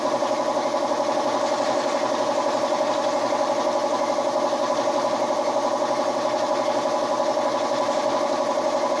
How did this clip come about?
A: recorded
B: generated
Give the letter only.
A